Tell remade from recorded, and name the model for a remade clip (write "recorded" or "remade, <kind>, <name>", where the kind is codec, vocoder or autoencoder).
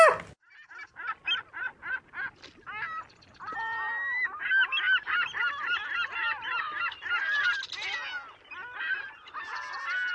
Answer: recorded